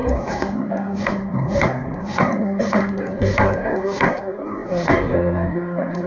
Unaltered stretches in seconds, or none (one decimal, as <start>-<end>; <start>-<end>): none

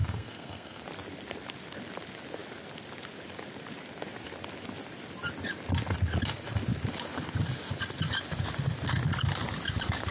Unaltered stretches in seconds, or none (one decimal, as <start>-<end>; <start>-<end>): 0.8-10.1

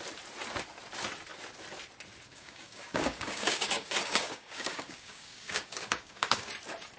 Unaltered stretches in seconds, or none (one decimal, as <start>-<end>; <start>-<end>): 0.0-2.3; 6.5-7.0

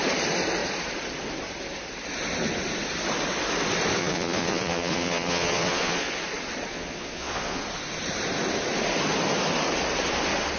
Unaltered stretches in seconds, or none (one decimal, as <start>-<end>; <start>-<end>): 0.0-4.0; 6.1-6.7; 7.6-10.6

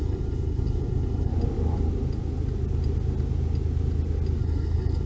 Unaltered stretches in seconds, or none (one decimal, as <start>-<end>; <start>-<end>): 1.3-4.4

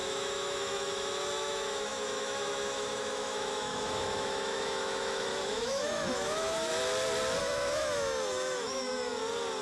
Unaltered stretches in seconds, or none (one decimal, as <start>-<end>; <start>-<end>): 6.7-7.4; 9.1-9.6

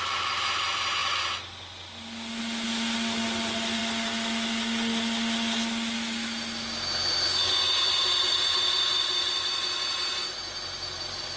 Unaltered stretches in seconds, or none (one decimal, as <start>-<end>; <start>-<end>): 0.0-11.4